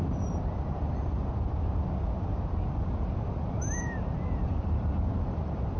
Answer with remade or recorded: remade